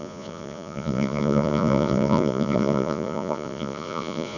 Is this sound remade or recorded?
remade